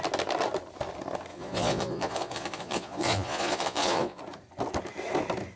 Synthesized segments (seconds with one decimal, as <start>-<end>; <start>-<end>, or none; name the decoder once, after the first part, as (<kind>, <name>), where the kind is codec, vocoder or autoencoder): 1.3-4.2 (vocoder, Vocos)